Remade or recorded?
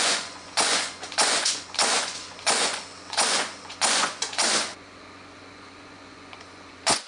remade